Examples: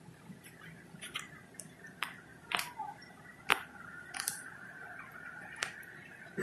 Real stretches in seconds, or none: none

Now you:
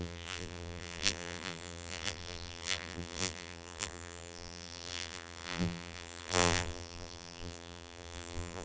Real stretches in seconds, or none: none